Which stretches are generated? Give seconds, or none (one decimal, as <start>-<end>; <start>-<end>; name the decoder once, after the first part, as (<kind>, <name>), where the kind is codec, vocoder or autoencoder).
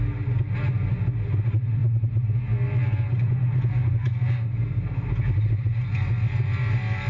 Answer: none